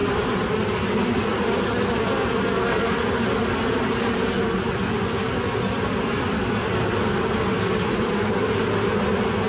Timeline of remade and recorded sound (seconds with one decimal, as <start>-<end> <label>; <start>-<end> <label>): 0.0-1.0 remade; 1.0-9.5 recorded